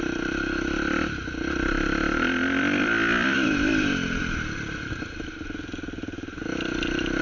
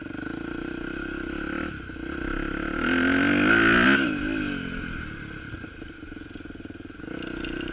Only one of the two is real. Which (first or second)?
second